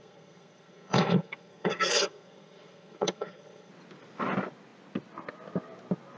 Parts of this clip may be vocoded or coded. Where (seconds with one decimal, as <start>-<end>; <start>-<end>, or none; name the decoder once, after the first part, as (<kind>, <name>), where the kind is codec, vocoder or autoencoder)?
0.0-3.7 (codec, SNAC)